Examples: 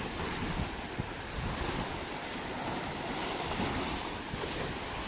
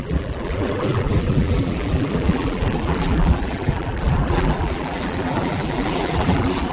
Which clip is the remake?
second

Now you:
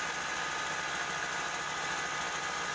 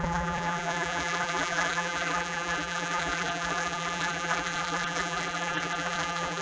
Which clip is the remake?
second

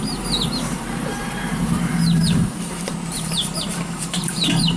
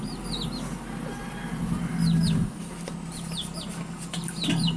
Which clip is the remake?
first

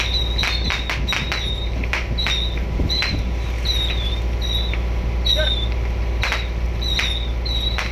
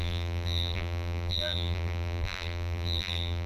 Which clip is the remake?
second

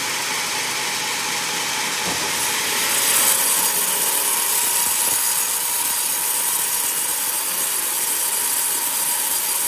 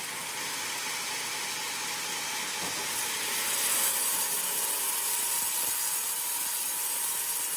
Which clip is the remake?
second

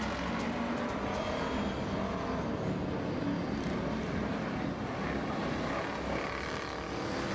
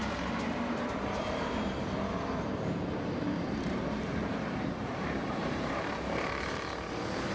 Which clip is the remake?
second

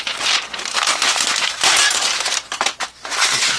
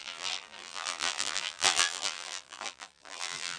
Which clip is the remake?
second